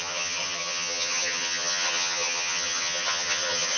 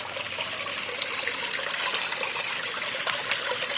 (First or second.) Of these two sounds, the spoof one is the first